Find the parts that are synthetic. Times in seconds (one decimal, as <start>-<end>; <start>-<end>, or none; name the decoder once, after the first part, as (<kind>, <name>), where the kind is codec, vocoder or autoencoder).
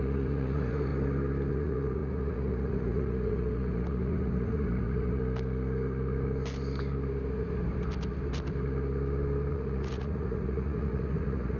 0.0-0.9 (vocoder, Vocos); 1.5-5.2; 9.5-11.6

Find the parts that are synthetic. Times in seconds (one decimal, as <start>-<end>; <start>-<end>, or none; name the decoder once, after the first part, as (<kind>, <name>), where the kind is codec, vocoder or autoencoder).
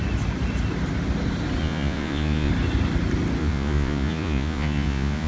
1.6-2.5 (vocoder, Vocos); 3.4-5.3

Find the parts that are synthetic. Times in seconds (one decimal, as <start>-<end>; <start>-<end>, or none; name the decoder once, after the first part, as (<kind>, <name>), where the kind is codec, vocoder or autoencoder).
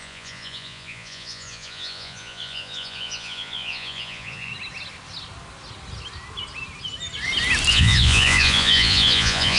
0.0-4.5 (vocoder, Vocos); 7.7-9.6